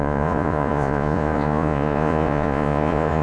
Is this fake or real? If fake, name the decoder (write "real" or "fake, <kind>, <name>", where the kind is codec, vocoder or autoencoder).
fake, vocoder, Vocos